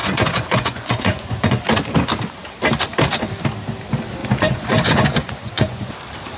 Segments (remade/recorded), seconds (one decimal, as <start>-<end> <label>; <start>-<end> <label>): 0.0-1.6 remade; 1.6-4.2 recorded; 4.2-5.9 remade; 5.9-6.4 recorded